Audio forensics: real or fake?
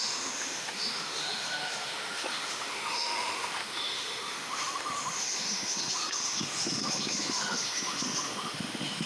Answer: fake